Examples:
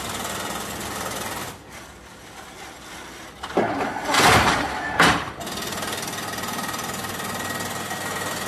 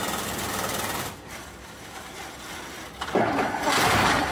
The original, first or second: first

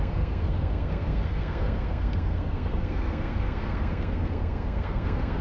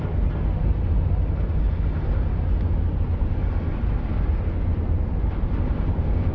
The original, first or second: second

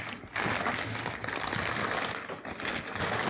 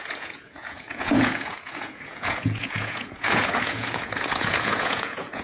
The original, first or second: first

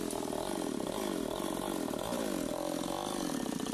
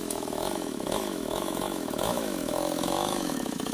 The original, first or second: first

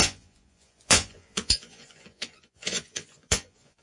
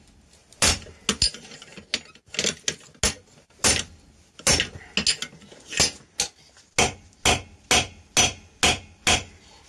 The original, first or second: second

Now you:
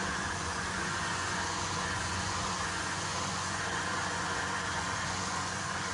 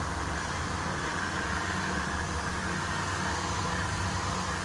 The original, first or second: second